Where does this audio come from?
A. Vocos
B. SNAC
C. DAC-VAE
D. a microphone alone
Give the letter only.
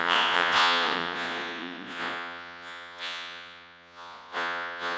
A